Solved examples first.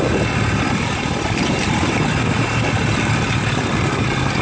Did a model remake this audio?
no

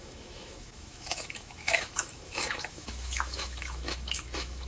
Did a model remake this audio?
yes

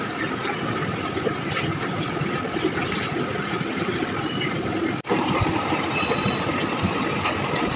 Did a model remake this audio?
no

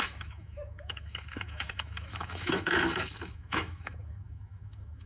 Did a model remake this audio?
yes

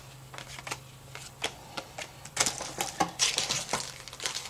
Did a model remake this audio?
no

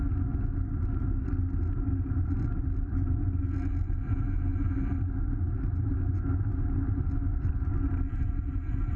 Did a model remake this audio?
no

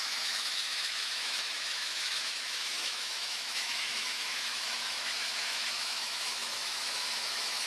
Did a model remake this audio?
yes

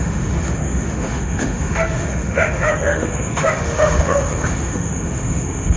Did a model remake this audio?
yes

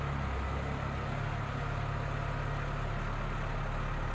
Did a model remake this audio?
no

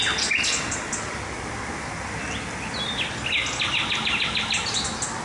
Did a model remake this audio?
no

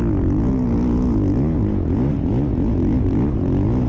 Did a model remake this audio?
no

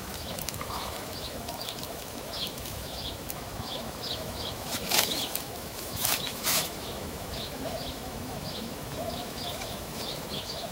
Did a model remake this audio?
yes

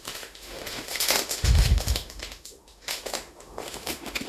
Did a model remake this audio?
yes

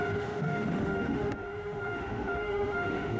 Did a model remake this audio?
yes